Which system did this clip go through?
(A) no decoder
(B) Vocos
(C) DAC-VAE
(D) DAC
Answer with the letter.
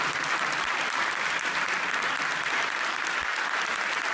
A